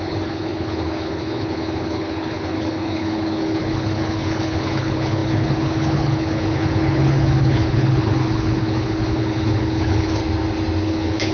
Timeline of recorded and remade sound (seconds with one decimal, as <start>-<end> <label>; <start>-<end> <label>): 0.0-10.2 remade; 10.2-10.8 recorded; 10.8-11.3 remade